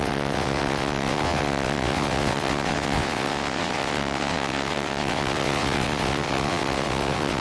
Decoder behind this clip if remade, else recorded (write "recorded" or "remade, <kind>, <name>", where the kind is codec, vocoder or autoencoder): remade, vocoder, WaveNeXt